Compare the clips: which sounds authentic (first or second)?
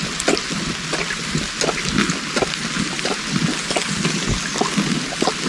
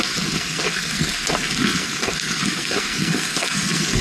first